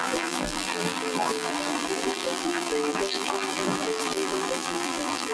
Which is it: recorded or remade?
remade